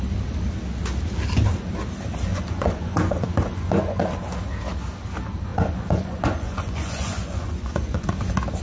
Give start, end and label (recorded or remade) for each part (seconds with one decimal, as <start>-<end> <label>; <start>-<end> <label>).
0.0-2.3 recorded; 2.3-4.0 remade; 4.0-5.5 recorded; 5.5-8.1 remade; 8.1-8.6 recorded